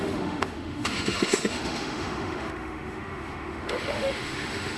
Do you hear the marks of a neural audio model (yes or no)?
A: yes